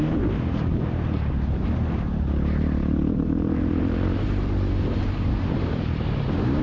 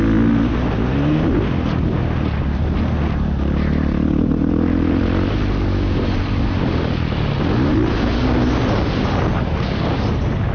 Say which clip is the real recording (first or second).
second